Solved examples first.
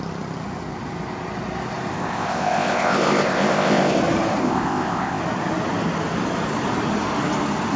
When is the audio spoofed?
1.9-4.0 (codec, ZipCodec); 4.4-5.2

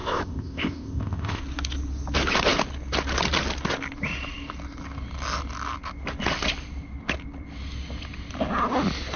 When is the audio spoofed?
0.0-1.4 (codec, ZipCodec)

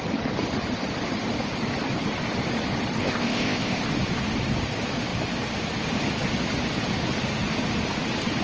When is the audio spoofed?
3.0-3.8 (codec, ZipCodec)

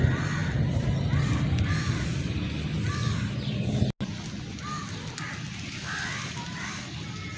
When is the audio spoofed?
none

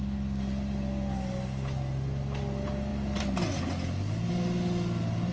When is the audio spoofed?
none

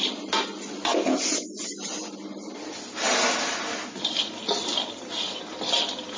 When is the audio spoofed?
none

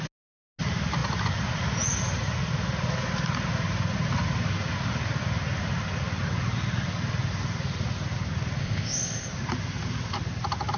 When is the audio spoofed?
8.6-9.3 (codec, ZipCodec)

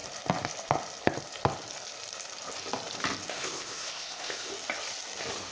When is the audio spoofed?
3.3-4.5 (codec, ZipCodec)